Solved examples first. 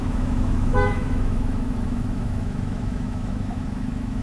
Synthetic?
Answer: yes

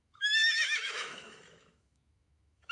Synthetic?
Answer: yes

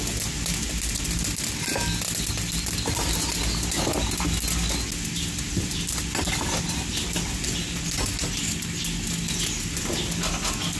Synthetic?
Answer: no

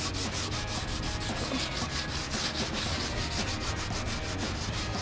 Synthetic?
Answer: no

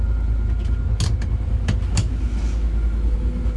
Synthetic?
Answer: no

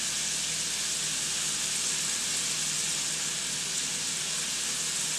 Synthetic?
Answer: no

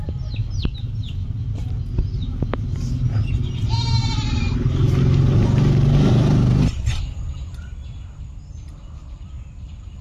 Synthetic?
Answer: no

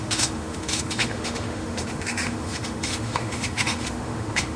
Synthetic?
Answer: yes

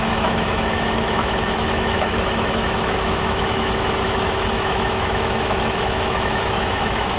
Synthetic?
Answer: yes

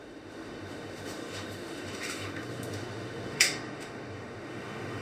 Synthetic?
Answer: yes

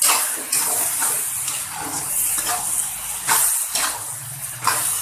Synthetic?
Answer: no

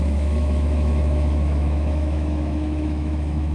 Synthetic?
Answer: yes